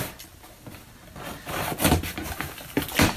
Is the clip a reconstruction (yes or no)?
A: no